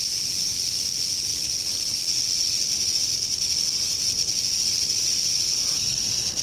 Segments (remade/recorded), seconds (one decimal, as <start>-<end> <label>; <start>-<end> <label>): 0.0-6.4 recorded